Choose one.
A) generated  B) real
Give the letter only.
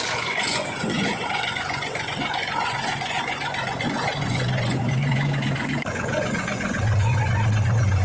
A